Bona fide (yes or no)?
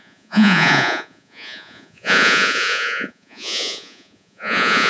no